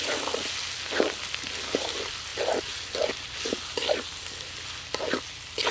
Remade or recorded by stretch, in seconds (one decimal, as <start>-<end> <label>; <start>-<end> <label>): 0.0-5.7 recorded